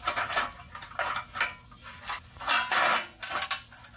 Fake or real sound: real